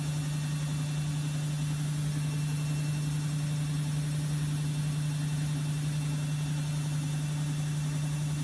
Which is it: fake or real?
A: real